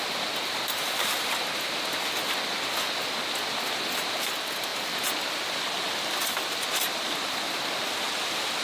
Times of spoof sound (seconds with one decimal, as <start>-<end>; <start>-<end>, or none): none